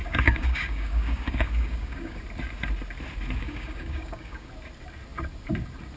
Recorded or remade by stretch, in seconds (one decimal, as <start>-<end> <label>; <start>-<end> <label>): 0.0-2.2 remade; 2.2-3.4 recorded; 3.4-4.5 remade; 4.5-6.0 recorded